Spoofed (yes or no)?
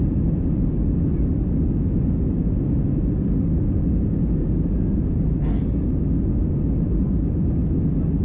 no